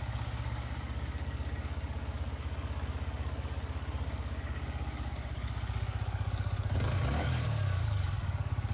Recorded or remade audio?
remade